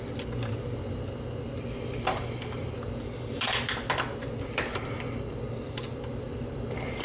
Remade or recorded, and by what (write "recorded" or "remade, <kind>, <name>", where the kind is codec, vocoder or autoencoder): recorded